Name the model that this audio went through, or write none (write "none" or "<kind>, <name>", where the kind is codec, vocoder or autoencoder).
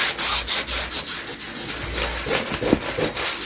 none